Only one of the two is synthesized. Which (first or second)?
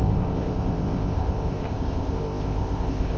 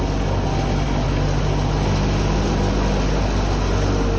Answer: first